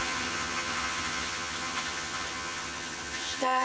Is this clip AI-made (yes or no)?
yes